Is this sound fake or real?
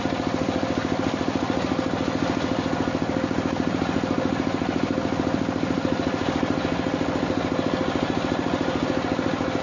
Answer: real